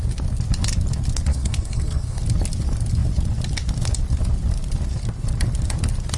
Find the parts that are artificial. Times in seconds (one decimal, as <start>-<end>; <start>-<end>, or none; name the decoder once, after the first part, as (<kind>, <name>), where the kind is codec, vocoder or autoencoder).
1.3-2.2 (codec, SNAC)